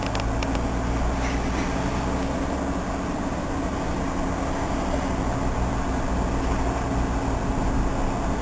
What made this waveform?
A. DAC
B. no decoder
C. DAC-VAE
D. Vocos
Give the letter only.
B